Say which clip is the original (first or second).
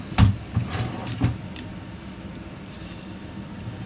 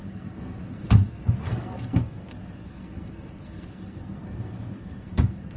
first